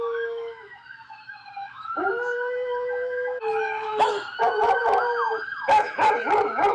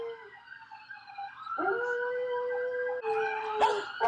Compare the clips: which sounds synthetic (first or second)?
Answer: first